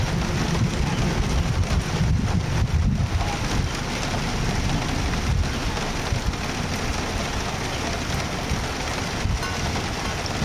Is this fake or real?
real